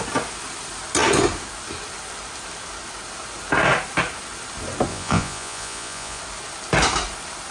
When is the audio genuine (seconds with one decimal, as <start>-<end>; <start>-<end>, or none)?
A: 0.0-4.9; 6.2-7.5